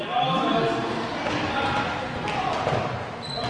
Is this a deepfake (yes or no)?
no